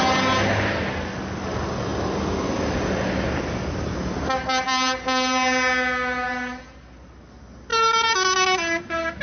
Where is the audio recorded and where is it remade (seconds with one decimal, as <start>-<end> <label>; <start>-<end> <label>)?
0.0-9.2 recorded

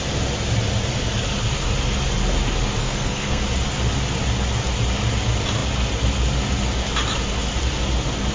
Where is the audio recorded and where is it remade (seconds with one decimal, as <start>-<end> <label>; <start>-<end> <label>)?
0.0-2.8 recorded; 2.8-3.4 remade; 3.4-8.3 recorded

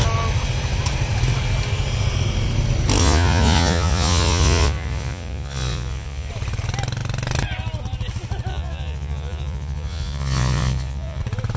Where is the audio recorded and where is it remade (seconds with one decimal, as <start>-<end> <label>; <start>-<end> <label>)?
0.0-3.0 recorded; 3.0-6.3 remade; 6.3-8.5 recorded; 8.5-11.2 remade; 11.2-11.6 recorded

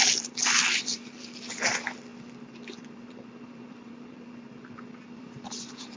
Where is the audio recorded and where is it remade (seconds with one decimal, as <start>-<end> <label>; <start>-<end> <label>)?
0.0-6.0 remade

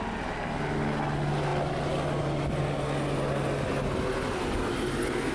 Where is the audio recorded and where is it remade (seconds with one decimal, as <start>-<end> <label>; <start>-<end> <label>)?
0.0-5.3 recorded

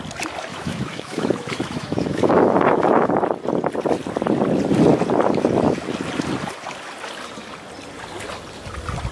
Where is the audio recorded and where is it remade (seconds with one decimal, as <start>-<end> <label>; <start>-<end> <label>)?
0.0-0.5 recorded; 0.5-3.1 remade; 3.1-9.1 recorded

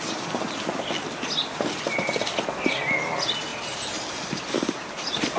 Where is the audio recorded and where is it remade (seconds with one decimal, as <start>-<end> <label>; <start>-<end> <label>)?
0.0-5.4 recorded